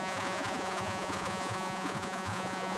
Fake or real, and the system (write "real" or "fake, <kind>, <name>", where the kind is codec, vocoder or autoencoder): fake, vocoder, Vocos